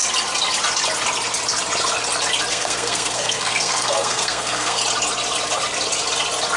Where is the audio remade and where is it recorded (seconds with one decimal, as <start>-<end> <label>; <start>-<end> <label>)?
0.0-2.5 recorded; 2.5-4.8 remade; 4.8-6.6 recorded